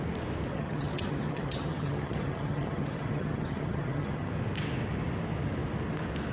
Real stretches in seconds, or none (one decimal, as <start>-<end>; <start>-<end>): 0.0-0.5; 4.3-6.3